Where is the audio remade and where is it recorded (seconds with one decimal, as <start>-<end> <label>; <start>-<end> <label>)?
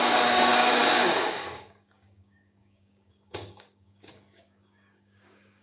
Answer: 0.0-5.6 remade